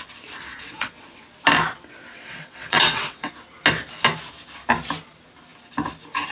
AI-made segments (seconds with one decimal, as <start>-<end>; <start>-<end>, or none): 0.5-1.2; 2.1-3.3